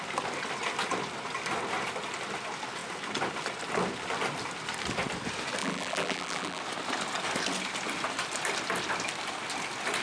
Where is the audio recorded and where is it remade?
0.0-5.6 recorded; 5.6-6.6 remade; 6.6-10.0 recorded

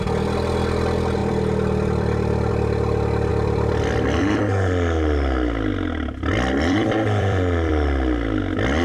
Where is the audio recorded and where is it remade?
0.0-1.2 recorded; 1.2-2.5 remade; 2.5-3.3 recorded; 3.3-4.4 remade; 4.4-6.3 recorded; 6.3-7.7 remade; 7.7-8.8 recorded